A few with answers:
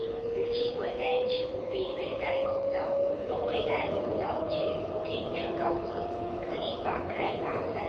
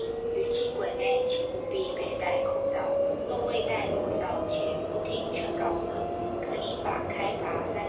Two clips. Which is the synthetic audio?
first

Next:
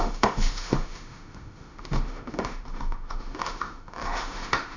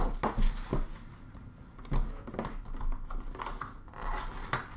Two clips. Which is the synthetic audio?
first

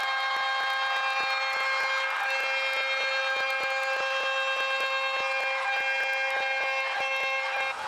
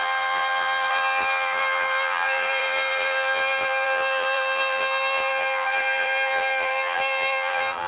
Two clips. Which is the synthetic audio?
second